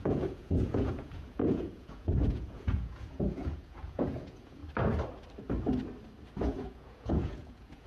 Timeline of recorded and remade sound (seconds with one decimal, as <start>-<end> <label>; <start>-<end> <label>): 0.0-4.6 remade; 4.6-6.4 recorded; 6.4-7.9 remade